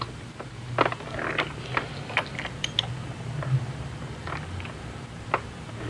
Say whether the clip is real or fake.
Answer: real